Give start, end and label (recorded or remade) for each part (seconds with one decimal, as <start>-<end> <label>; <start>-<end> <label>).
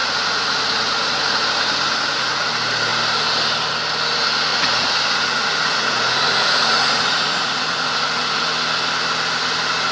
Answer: 0.0-2.5 remade; 2.5-4.5 recorded; 4.5-8.5 remade; 8.5-9.9 recorded